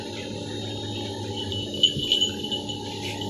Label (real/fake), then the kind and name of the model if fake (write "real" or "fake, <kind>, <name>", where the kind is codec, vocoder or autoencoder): real